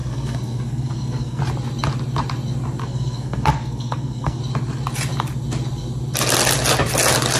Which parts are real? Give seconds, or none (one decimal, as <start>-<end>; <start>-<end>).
1.4-2.8; 4.4-7.4